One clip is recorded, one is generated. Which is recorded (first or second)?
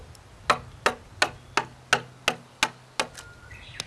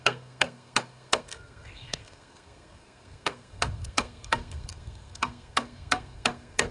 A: first